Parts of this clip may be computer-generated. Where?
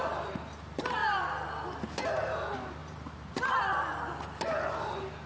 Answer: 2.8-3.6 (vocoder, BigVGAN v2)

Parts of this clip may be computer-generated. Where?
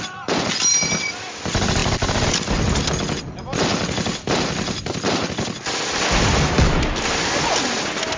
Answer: none